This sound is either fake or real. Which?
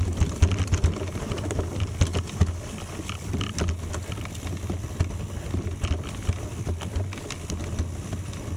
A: real